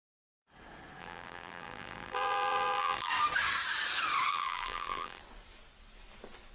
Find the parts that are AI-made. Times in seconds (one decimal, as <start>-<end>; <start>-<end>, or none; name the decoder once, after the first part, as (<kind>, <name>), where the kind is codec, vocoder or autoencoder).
1.0-3.1 (vocoder, BigVGAN v2); 4.3-5.2